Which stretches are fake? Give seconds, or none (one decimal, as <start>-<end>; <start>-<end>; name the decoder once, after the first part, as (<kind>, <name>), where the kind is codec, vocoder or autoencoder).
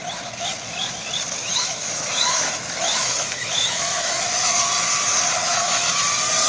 1.4-4.5 (autoencoder, DAC-VAE); 5.4-6.1